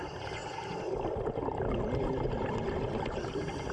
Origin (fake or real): real